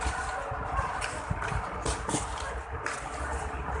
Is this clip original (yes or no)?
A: yes